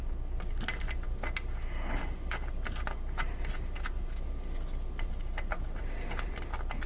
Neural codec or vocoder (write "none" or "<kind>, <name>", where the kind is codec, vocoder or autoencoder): none